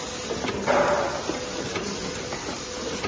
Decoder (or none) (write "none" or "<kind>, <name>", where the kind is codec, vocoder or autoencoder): none